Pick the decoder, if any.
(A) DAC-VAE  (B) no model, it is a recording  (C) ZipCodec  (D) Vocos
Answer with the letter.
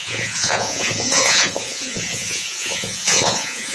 D